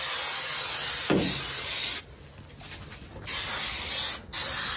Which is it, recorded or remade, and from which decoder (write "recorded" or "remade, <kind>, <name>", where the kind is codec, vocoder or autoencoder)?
recorded